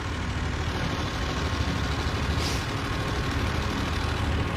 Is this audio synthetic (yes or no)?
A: no